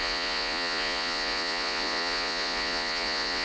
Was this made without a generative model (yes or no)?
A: no